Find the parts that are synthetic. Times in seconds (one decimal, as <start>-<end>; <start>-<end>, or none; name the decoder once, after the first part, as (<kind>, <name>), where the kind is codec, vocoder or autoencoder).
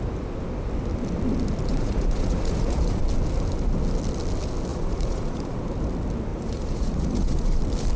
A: 1.7-3.0 (vocoder, Vocos); 4.7-5.6; 6.3-7.6